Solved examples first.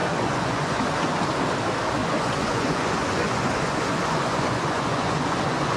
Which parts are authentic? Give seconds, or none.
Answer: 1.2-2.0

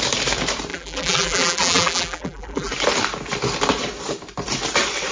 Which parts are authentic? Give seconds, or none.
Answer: 0.0-0.7; 2.7-5.1

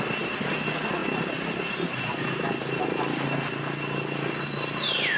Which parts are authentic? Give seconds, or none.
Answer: 0.0-5.2

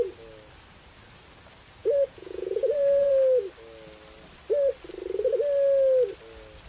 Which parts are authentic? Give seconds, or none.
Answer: 0.0-1.8; 3.1-6.7

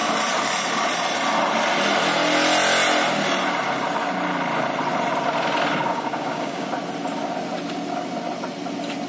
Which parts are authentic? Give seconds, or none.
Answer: 0.0-5.9; 6.7-9.1